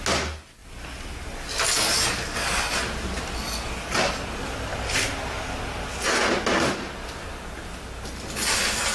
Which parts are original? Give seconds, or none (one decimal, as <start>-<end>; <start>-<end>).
0.0-8.9